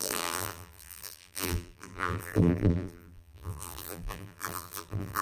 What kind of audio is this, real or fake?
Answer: fake